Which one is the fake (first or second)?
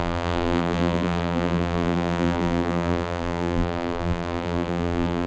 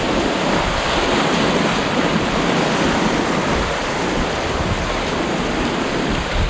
first